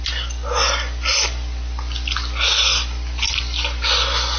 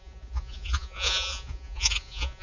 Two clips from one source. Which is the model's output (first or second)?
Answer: second